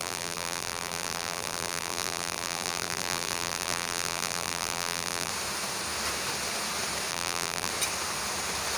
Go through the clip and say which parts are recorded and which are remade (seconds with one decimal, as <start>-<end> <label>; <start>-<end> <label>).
0.0-5.3 remade; 5.3-7.1 recorded; 7.1-7.7 remade; 7.7-8.8 recorded